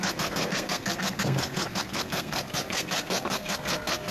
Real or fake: fake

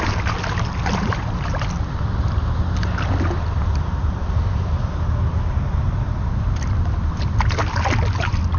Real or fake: real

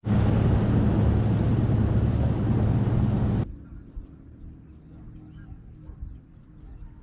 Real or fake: real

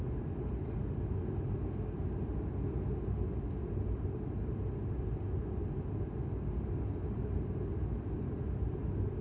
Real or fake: real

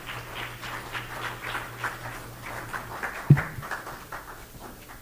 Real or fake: real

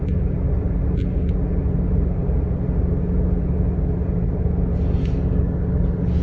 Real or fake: real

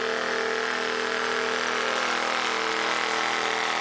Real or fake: real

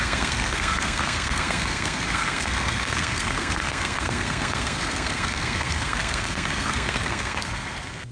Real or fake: fake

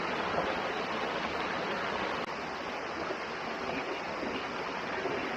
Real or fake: real